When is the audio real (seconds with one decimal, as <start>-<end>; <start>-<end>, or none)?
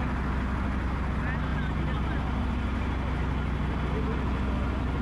0.0-5.0